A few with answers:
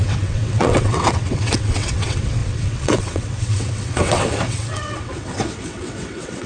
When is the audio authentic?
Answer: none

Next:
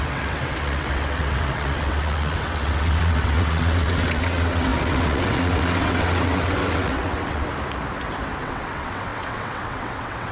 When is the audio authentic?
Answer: 7.5-8.4

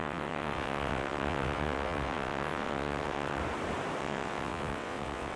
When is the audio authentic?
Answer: 3.4-4.0

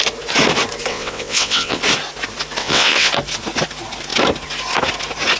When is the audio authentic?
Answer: 0.0-0.9; 1.8-2.6; 3.1-5.4

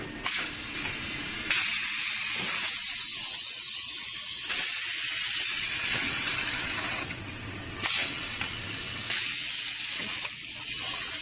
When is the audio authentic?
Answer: 0.0-3.3

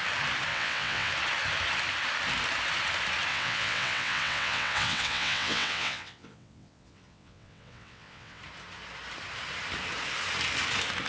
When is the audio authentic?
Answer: 0.0-0.5; 1.1-3.3; 8.4-11.1

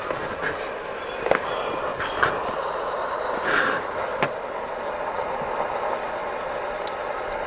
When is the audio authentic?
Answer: 0.0-7.5